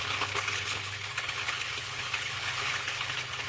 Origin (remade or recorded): remade